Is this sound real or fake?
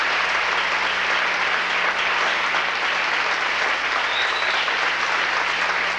real